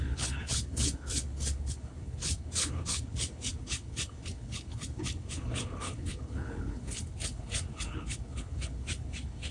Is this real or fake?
fake